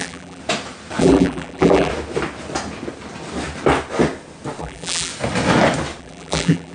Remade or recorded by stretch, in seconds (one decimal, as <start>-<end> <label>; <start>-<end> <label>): 0.0-0.4 remade; 0.4-1.0 recorded; 1.0-1.9 remade; 1.9-4.6 recorded; 4.6-5.1 remade; 5.1-6.0 recorded; 6.0-6.7 remade

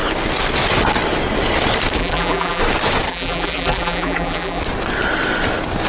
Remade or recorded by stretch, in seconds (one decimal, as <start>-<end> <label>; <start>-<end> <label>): 0.0-2.0 recorded; 2.0-2.6 remade; 2.6-3.1 recorded; 3.1-4.6 remade; 4.6-5.9 recorded

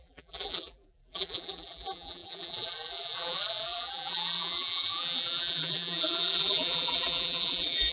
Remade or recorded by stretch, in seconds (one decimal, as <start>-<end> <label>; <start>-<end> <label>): 0.0-7.9 remade

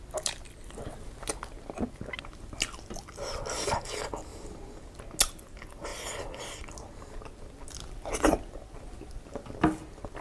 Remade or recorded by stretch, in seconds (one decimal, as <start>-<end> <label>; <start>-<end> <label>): 0.0-10.2 recorded

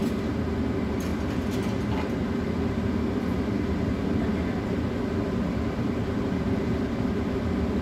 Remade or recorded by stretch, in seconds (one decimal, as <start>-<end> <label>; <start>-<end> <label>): 0.0-7.8 recorded

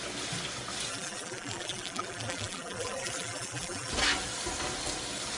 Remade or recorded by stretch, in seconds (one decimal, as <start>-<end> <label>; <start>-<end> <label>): 0.0-0.9 recorded; 0.9-3.9 remade; 3.9-5.4 recorded

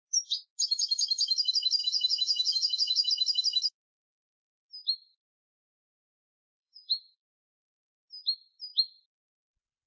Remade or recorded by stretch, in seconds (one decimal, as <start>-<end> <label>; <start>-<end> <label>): 0.0-1.8 recorded; 1.8-3.1 remade; 3.1-5.1 recorded; 5.1-7.6 remade; 7.6-9.9 recorded

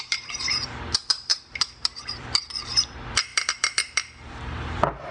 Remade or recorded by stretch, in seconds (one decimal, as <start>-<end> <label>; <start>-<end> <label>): 0.0-5.1 remade